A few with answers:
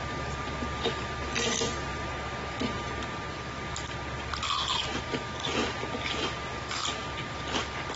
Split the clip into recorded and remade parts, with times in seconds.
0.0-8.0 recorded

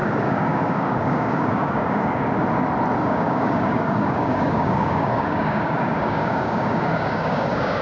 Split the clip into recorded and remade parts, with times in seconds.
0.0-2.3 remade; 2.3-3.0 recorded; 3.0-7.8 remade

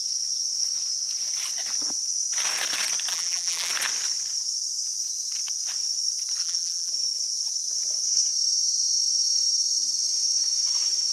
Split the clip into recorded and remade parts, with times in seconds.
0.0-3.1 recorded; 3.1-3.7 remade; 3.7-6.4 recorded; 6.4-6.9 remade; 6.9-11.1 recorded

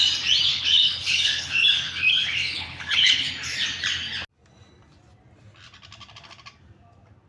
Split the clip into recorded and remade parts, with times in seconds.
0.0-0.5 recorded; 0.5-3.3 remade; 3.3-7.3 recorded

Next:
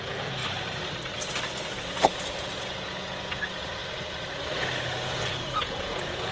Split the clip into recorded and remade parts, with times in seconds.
0.0-0.4 remade; 0.4-2.1 recorded; 2.1-3.8 remade; 3.8-4.8 recorded; 4.8-6.3 remade